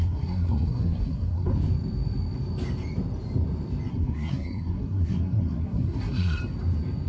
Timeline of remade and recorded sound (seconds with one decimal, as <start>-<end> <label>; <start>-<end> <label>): 0.0-1.5 remade; 1.5-3.9 recorded; 3.9-6.4 remade; 6.4-7.1 recorded